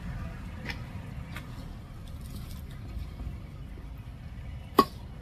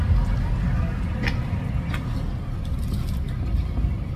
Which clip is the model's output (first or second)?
first